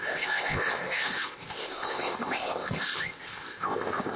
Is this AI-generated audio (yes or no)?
yes